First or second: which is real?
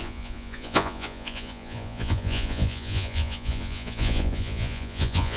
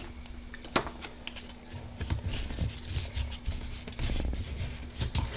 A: second